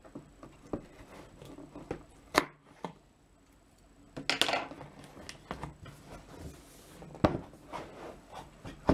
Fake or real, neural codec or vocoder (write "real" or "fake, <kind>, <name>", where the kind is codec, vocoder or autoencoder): real